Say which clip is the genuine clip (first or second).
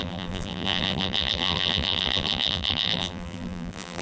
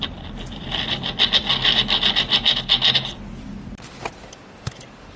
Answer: second